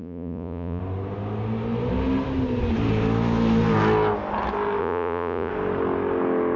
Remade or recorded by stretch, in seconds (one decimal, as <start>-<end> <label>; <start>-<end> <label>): 0.0-0.8 remade; 0.8-4.8 recorded; 4.8-5.5 remade; 5.5-6.6 recorded